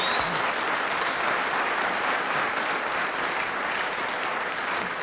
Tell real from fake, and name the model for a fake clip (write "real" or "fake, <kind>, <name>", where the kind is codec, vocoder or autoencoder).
real